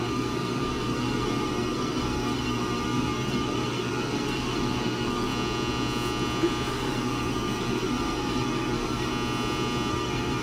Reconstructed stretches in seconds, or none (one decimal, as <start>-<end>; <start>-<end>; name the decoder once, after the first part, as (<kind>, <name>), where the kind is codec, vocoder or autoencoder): 0.0-5.3 (codec, SNAC); 6.7-9.1; 9.9-10.4